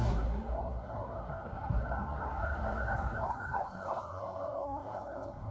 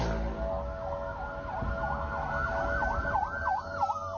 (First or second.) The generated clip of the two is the first